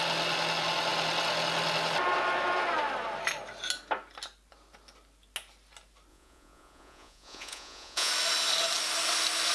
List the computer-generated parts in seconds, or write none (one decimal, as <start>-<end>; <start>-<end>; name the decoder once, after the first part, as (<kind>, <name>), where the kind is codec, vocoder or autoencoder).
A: 6.1-8.1 (vocoder, Vocos)